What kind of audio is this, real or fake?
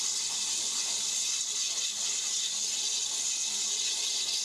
real